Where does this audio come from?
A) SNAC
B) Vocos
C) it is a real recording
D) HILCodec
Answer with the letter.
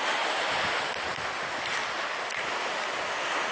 C